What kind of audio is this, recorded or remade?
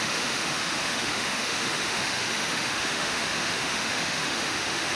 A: remade